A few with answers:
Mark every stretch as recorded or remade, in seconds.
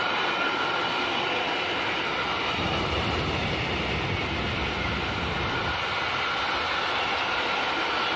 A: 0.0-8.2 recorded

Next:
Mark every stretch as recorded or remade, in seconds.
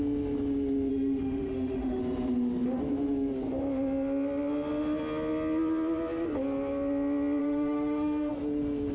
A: 0.0-0.9 recorded; 0.9-2.0 remade; 2.0-7.4 recorded; 7.4-8.3 remade; 8.3-8.9 recorded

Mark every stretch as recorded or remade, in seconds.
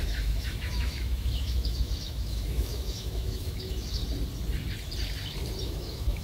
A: 0.0-4.0 remade; 4.0-5.6 recorded; 5.6-6.2 remade